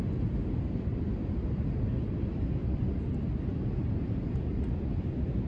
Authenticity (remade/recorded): recorded